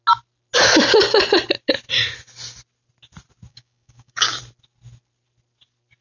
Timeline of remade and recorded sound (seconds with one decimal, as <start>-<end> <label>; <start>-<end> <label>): 0.0-3.5 recorded; 3.5-4.4 remade; 4.4-6.0 recorded